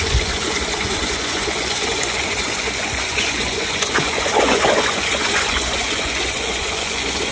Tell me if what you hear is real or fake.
fake